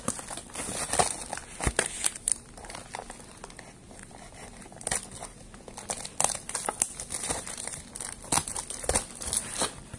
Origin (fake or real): real